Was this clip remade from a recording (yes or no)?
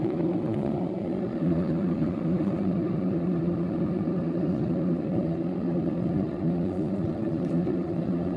yes